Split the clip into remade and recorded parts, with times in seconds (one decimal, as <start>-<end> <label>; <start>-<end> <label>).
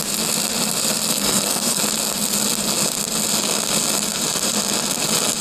0.0-1.1 recorded; 1.1-1.8 remade; 1.8-5.4 recorded